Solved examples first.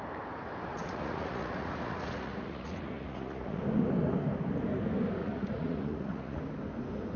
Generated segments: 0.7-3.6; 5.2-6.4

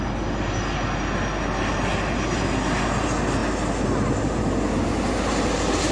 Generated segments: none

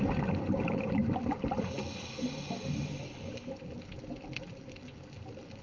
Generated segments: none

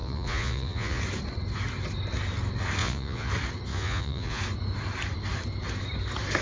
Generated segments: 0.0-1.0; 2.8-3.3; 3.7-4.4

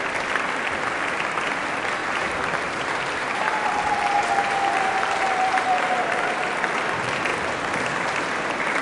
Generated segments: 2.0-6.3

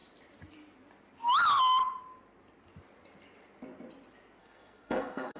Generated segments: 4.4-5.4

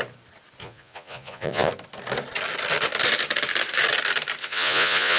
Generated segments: 0.6-1.7; 4.4-5.2

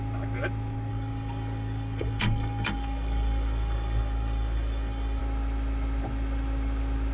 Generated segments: 0.9-5.2